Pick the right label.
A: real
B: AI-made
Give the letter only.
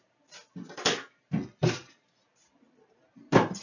A